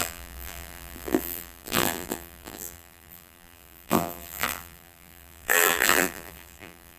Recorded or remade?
remade